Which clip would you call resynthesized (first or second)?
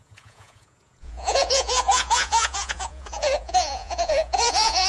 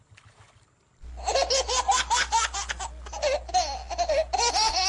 first